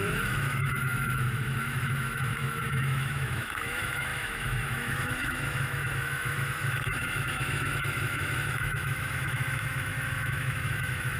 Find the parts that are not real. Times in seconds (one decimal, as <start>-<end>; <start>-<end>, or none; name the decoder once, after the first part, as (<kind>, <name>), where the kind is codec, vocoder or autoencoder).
0.0-11.2 (autoencoder, DAC-VAE)